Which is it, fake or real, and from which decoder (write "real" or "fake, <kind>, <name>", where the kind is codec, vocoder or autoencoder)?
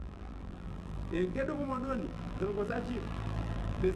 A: fake, vocoder, BigVGAN v2